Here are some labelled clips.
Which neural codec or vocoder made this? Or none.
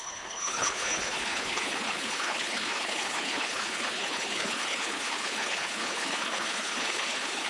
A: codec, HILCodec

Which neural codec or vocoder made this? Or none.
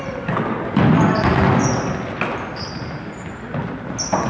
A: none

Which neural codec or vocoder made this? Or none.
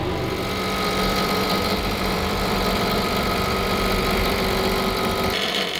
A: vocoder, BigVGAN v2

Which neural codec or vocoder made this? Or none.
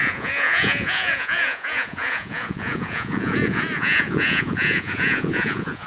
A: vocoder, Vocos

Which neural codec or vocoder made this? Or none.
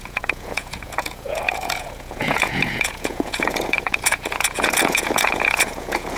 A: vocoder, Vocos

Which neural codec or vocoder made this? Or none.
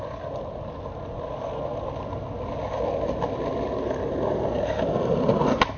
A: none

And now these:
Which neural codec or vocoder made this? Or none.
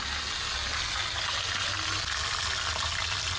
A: none